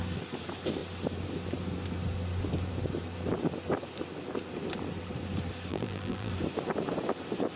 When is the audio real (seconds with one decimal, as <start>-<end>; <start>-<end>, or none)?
0.0-5.7; 6.3-7.6

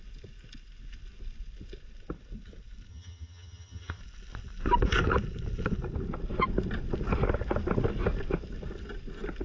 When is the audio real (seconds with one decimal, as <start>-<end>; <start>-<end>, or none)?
0.0-2.9; 4.0-9.4

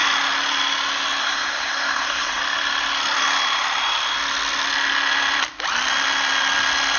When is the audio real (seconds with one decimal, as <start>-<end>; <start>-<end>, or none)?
0.0-1.2; 2.4-7.0

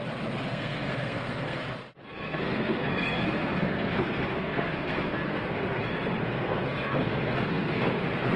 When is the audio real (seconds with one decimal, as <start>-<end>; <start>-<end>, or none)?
0.0-0.5; 1.6-2.1; 5.8-6.2; 8.0-8.4

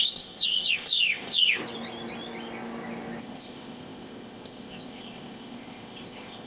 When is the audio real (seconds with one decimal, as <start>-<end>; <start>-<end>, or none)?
1.6-3.2